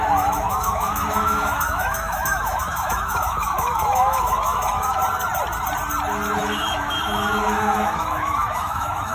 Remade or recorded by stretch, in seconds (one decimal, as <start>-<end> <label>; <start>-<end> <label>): 0.0-5.0 remade; 5.0-6.4 recorded; 6.4-9.1 remade